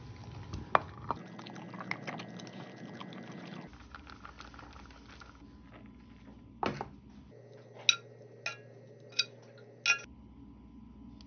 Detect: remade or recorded recorded